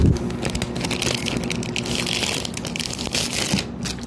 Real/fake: real